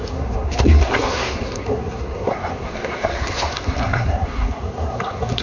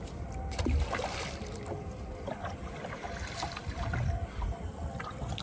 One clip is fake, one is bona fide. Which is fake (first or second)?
first